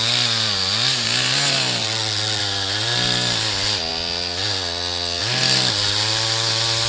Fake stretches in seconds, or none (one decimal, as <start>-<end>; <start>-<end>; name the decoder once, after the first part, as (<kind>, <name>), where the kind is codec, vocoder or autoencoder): 1.8-2.4 (vocoder, WaveNeXt)